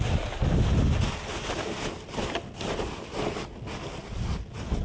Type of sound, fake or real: real